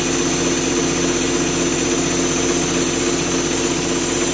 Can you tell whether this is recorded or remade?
recorded